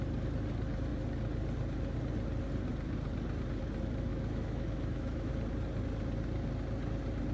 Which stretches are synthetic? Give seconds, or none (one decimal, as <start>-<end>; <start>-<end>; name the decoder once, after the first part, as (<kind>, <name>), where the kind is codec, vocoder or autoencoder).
4.1-5.3 (autoencoder, DAC-VAE)